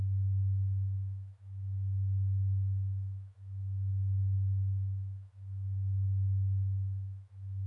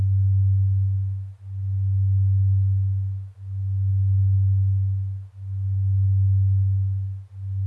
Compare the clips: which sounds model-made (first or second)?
first